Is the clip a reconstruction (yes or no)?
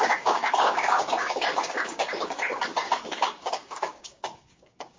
yes